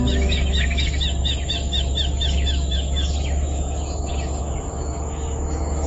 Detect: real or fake fake